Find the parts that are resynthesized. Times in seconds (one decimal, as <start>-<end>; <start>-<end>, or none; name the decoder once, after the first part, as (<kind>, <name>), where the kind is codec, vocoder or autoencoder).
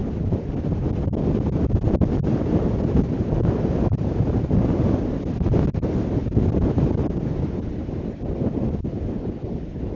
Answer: none